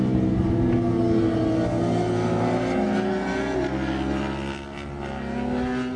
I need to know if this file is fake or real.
real